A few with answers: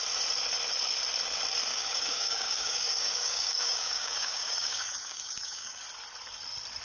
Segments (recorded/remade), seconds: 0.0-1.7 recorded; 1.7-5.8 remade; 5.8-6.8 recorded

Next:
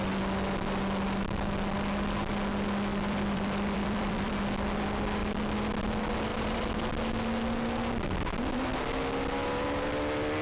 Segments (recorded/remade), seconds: 0.0-2.9 recorded; 2.9-4.3 remade; 4.3-6.3 recorded; 6.3-6.9 remade; 6.9-10.4 recorded